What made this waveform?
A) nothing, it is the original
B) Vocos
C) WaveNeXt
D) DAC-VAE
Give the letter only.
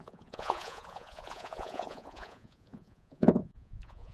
B